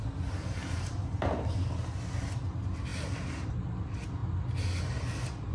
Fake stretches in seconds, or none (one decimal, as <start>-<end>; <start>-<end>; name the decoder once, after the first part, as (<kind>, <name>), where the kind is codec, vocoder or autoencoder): 0.6-1.7 (vocoder, BigVGAN v2); 2.9-3.5

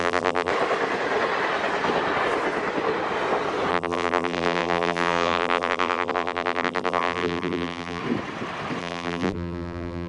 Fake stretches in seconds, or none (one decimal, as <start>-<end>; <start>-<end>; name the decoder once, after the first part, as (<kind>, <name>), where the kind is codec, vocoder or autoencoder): 0.0-0.5 (vocoder, BigVGAN v2); 3.7-8.0; 8.8-10.1

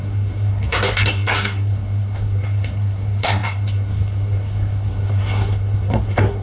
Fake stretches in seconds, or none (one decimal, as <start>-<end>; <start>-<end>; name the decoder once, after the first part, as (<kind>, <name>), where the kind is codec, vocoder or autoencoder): 0.0-6.4 (codec, SNAC)

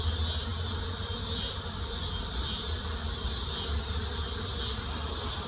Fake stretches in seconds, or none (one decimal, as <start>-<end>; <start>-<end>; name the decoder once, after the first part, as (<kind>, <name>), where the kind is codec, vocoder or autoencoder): none